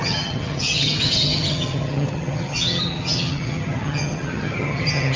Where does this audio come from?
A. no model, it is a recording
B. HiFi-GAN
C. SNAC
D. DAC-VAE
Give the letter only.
B